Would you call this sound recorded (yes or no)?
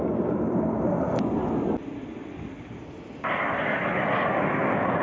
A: yes